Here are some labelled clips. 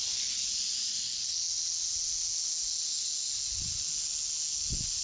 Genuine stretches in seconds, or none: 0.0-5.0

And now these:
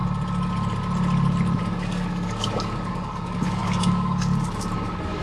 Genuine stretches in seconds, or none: 0.0-1.6

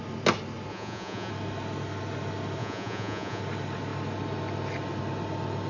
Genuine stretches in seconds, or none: 0.0-0.7; 1.3-2.6; 3.4-5.7

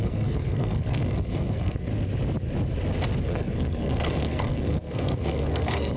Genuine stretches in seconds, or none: 1.9-3.2

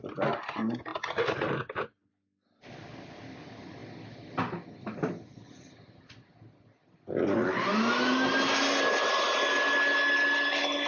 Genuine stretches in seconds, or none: 0.0-10.9

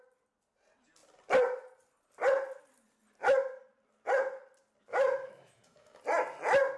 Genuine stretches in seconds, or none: 0.0-4.9; 6.0-6.8

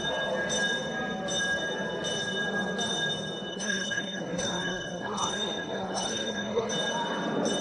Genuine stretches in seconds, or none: 0.0-3.5; 6.7-7.6